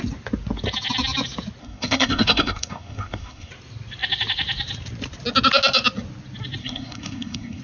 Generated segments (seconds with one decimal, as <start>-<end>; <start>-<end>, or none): 1.6-3.5; 6.6-7.6